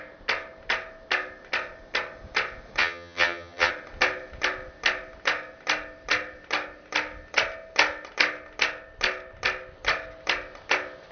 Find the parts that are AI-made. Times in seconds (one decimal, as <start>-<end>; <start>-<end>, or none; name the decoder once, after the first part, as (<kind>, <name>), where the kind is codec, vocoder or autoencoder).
2.8-3.7 (vocoder, HiFi-GAN)